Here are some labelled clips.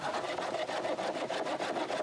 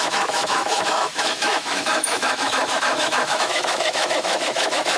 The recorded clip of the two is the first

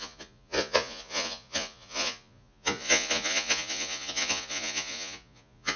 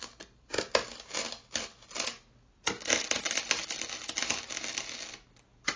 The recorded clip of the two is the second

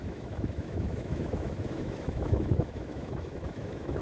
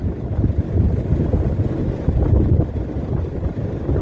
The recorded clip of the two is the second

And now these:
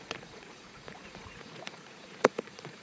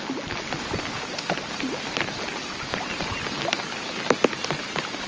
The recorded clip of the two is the second